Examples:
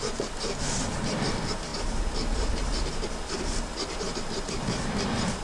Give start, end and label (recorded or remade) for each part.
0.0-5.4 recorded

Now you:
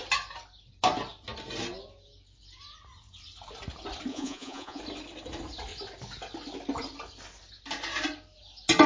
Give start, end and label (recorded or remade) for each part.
0.0-4.1 recorded; 4.1-4.8 remade; 4.8-8.9 recorded

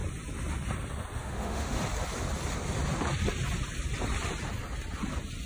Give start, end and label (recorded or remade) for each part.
0.0-1.2 recorded; 1.2-1.8 remade; 1.8-5.5 recorded

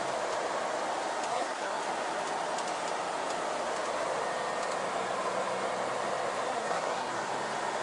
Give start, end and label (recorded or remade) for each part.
0.0-1.3 recorded; 1.3-1.8 remade; 1.8-6.5 recorded; 6.5-7.3 remade; 7.3-7.8 recorded

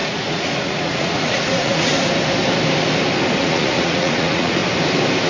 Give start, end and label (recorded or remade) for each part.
0.0-1.9 remade; 1.9-3.4 recorded; 3.4-4.6 remade; 4.6-5.3 recorded